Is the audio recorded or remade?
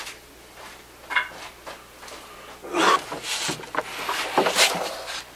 recorded